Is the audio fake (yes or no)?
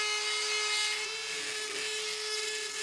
no